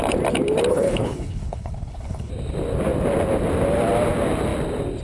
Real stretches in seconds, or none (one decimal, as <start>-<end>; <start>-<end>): 0.0-0.7; 2.3-5.0